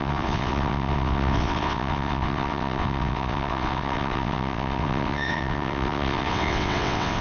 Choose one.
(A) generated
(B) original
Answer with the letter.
A